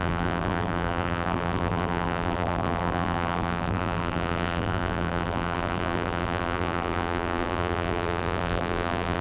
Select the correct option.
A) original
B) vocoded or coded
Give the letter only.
B